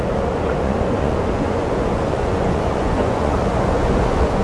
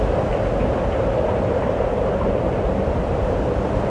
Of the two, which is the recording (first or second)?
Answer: second